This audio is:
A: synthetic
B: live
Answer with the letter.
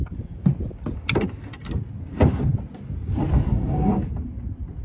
B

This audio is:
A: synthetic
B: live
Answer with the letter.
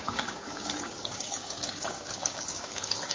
A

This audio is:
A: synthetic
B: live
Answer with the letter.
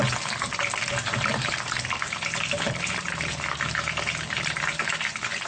B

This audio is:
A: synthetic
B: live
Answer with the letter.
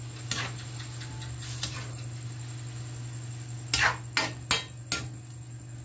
B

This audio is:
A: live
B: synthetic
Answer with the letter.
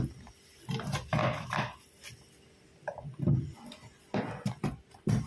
A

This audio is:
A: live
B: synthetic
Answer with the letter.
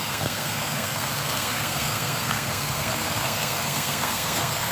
B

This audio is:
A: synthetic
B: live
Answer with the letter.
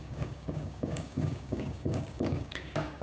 A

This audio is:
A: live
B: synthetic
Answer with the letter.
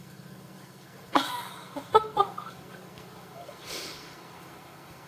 B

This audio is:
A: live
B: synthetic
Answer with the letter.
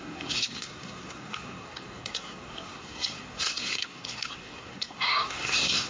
B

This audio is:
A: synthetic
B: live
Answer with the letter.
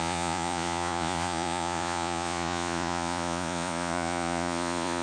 A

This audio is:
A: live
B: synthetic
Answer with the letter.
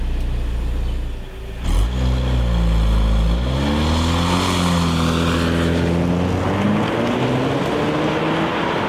A